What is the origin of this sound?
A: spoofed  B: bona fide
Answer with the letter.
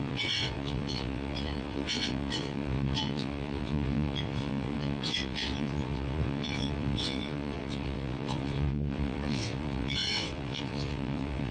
A